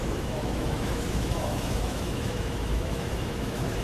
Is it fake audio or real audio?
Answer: fake